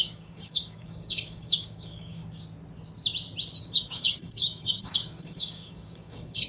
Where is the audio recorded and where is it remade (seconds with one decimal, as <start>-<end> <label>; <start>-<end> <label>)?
0.0-2.2 remade; 2.2-3.6 recorded; 3.6-6.5 remade